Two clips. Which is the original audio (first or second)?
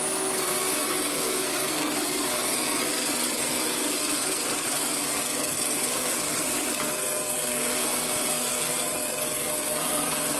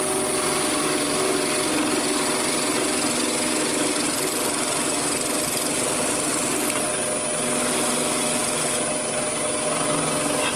second